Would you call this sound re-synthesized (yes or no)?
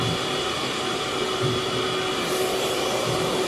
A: no